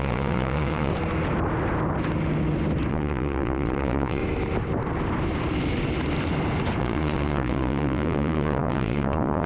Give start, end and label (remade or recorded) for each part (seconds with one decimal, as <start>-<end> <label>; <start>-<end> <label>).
0.0-0.9 remade; 0.9-2.9 recorded; 2.9-4.2 remade; 4.2-6.8 recorded; 6.8-9.5 remade